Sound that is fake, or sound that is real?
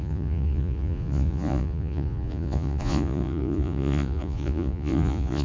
fake